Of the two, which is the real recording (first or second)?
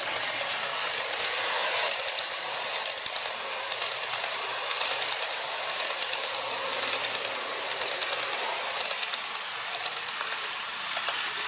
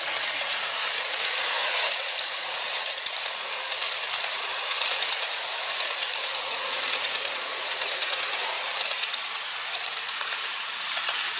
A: first